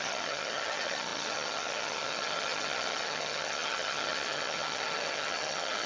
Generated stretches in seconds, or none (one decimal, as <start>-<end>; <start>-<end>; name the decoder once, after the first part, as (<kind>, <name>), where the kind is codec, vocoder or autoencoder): 0.0-5.9 (vocoder, HiFi-GAN)